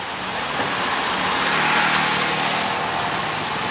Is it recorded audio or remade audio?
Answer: recorded